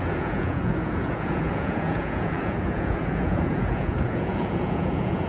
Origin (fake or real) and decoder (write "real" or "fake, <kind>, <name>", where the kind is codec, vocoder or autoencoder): fake, vocoder, Vocos